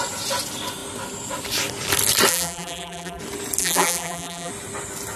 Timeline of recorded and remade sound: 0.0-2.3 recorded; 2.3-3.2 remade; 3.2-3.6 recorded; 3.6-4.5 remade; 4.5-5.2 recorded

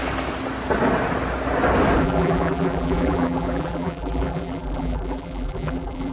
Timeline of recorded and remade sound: 0.0-2.0 recorded; 2.0-6.1 remade

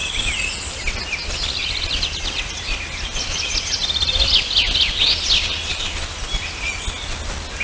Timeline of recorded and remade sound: 0.0-7.6 recorded

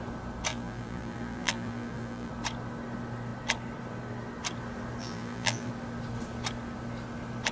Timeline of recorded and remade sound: 0.0-0.5 recorded; 0.5-2.3 remade; 2.3-5.0 recorded; 5.0-5.7 remade; 5.7-7.5 recorded

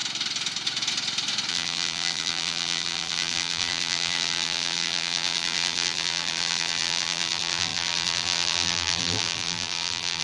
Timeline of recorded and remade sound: 0.0-1.5 recorded; 1.5-10.2 remade